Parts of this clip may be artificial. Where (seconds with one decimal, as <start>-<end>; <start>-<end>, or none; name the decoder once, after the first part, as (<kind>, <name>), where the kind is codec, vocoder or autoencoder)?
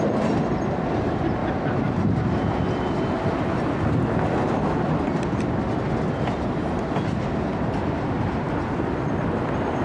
none